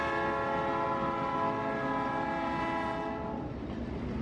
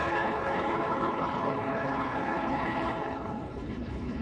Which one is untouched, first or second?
first